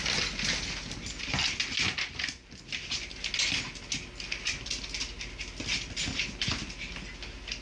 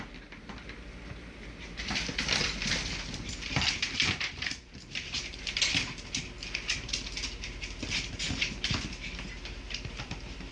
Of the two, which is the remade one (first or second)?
second